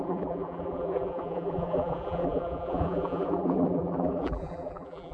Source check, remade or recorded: remade